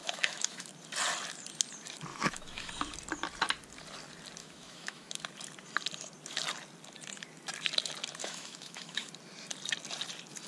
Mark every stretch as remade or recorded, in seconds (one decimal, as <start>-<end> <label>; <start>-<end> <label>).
0.0-0.7 remade; 0.7-2.1 recorded; 2.1-2.7 remade; 2.7-4.4 recorded; 4.4-5.2 remade; 5.2-8.2 recorded; 8.2-9.1 remade; 9.1-10.5 recorded